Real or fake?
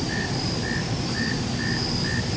real